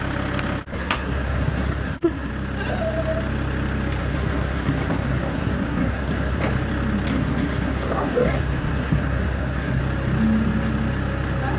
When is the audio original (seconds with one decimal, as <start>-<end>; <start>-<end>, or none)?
0.0-0.7; 2.3-4.0; 6.4-7.1; 9.8-11.6